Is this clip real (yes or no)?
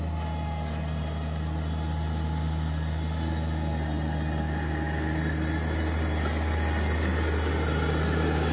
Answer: yes